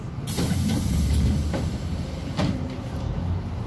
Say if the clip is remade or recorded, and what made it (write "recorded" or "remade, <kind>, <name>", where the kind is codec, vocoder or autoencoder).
remade, vocoder, BigVGAN v2